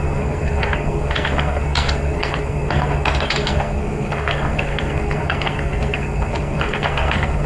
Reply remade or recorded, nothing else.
remade